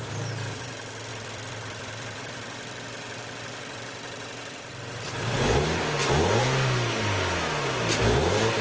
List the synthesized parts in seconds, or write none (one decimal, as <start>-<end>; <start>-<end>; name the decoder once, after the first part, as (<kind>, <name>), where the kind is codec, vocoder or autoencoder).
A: 1.1-5.5 (vocoder, BigVGAN v2)